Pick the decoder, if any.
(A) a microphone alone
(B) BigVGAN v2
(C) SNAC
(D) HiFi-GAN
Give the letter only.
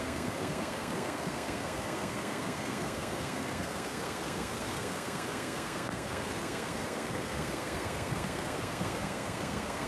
C